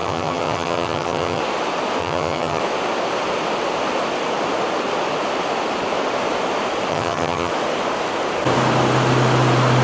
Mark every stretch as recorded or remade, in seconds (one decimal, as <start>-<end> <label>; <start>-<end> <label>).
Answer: 0.0-1.4 remade; 1.4-2.0 recorded; 2.0-2.6 remade; 2.6-6.9 recorded; 6.9-7.5 remade; 7.5-9.8 recorded